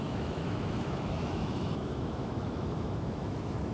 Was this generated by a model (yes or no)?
yes